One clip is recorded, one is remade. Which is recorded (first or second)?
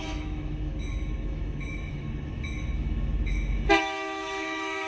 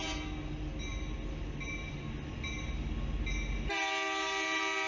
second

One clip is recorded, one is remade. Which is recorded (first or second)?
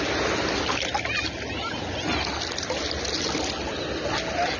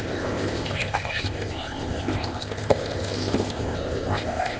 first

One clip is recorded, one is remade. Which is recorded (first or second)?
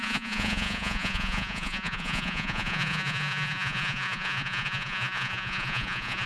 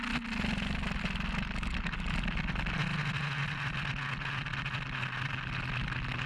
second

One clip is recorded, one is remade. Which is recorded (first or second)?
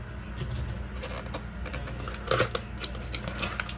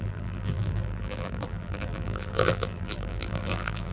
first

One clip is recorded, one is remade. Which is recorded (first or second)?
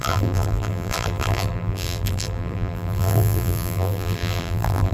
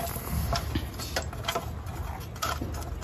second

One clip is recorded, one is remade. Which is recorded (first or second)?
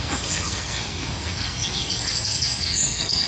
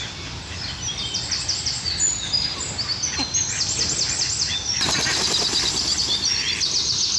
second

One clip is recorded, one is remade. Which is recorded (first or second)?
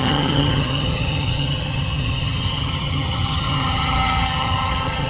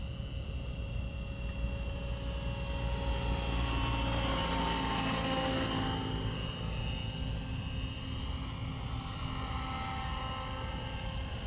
second